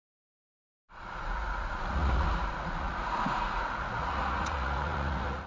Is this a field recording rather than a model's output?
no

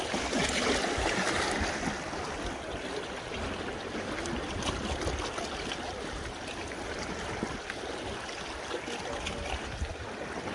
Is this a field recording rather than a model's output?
yes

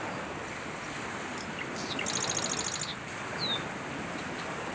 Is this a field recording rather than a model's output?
yes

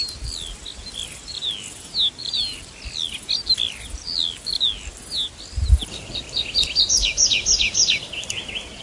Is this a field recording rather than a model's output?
yes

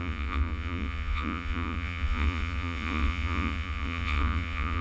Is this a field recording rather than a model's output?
no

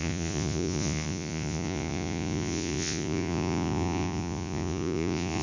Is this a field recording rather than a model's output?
no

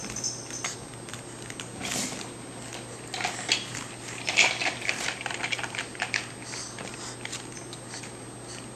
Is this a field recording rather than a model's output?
yes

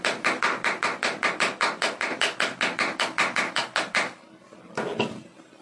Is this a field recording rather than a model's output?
yes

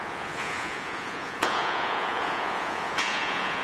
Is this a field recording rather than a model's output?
no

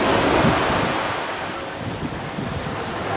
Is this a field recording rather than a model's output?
yes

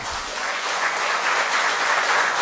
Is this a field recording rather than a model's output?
no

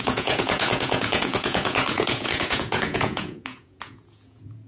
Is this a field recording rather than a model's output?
no